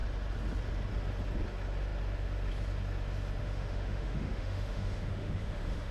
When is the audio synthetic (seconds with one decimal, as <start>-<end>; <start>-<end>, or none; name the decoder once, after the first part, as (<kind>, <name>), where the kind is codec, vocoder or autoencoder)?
3.4-5.9 (autoencoder, DAC-VAE)